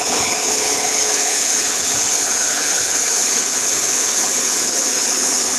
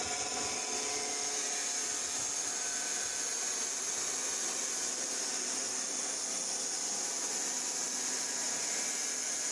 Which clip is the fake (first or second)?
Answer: first